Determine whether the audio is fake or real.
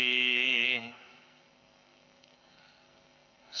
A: fake